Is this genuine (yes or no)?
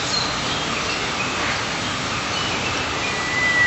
yes